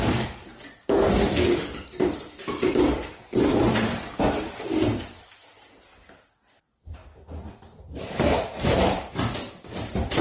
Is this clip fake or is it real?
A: fake